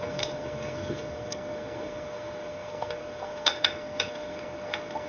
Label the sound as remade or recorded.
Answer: remade